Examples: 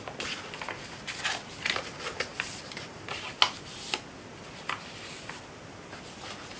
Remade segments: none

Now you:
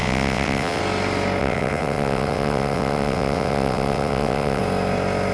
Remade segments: 0.0-0.8 (vocoder, WaveNeXt); 1.4-4.6

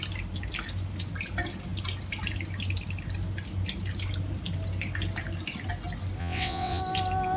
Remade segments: 6.2-6.8 (vocoder, WaveNeXt)

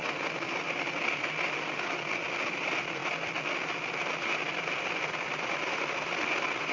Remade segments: none